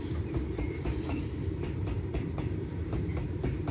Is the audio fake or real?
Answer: fake